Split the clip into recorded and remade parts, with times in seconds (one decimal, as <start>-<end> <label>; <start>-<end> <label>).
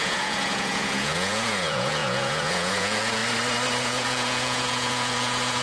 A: 0.0-3.2 remade; 3.2-3.8 recorded; 3.8-5.6 remade